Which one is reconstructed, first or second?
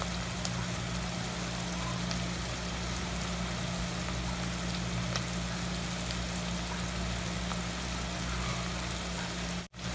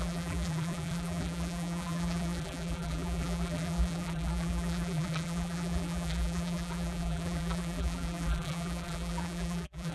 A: second